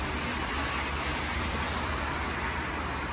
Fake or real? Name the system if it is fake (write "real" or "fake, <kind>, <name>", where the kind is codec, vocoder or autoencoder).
real